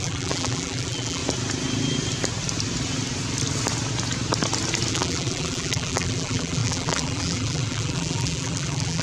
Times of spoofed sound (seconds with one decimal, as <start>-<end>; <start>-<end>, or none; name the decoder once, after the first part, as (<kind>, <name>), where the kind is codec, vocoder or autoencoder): 0.0-1.2 (vocoder, BigVGAN v2); 4.9-9.0